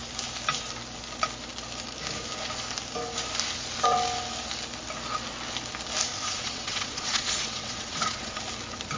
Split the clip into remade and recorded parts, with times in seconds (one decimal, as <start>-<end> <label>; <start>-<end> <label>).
0.0-6.1 recorded; 6.1-8.4 remade; 8.4-9.0 recorded